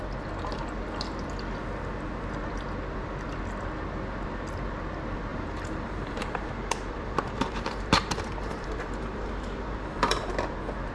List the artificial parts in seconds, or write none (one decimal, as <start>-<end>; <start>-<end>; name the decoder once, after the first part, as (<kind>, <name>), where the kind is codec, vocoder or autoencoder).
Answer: 5.3-10.3 (vocoder, BigVGAN v2)